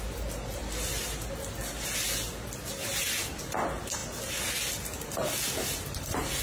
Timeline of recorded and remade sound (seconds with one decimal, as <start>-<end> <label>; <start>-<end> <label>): 0.0-6.4 recorded

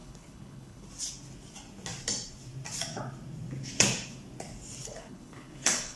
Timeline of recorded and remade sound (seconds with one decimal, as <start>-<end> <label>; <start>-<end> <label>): 0.0-0.9 remade; 0.9-4.8 recorded; 4.8-6.0 remade

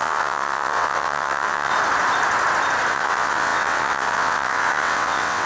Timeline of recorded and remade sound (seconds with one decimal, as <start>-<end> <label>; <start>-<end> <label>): 0.0-1.7 remade; 1.7-2.9 recorded; 2.9-5.5 remade